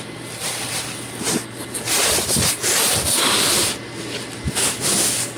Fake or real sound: real